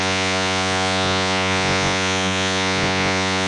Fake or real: fake